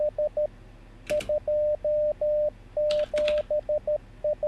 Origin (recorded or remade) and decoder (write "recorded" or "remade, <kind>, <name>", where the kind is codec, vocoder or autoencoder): recorded